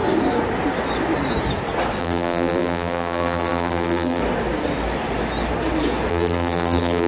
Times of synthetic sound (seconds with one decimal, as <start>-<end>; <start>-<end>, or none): 2.0-4.2; 6.1-7.1